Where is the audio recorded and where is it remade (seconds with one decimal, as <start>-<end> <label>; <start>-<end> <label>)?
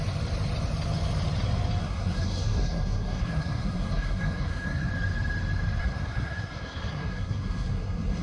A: 0.0-1.8 recorded; 1.8-4.9 remade; 4.9-5.8 recorded; 5.8-8.2 remade